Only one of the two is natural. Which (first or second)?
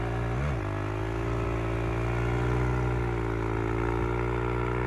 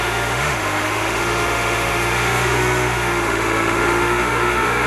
first